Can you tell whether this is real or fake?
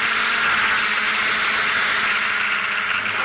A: real